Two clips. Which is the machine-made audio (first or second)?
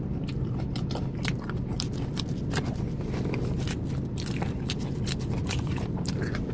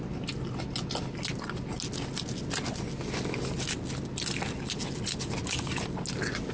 first